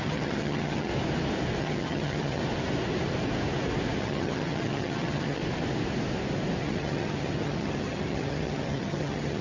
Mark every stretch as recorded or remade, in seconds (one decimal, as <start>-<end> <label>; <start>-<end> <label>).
0.0-0.9 remade; 0.9-1.6 recorded; 1.6-2.4 remade; 2.4-4.0 recorded; 4.0-5.4 remade; 5.4-6.6 recorded; 6.6-9.4 remade